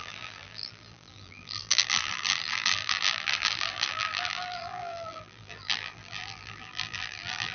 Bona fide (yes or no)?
no